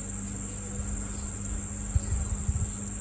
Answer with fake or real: real